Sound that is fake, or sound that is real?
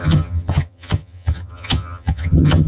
fake